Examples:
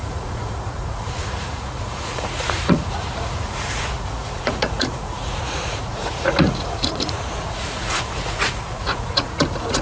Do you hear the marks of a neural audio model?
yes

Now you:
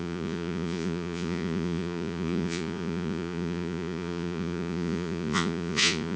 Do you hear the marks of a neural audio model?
yes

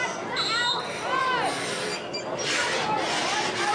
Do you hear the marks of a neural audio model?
no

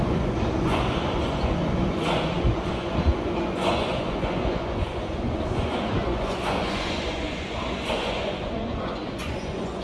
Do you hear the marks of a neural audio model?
yes